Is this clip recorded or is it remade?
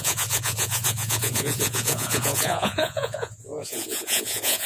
remade